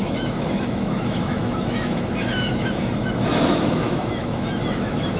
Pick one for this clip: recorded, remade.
remade